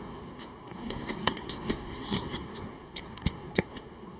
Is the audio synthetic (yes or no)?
yes